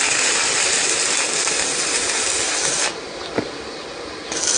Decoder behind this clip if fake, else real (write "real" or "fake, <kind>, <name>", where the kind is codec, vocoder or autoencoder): real